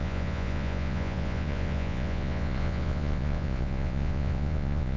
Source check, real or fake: fake